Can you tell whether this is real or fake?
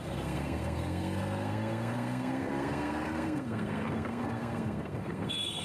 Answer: fake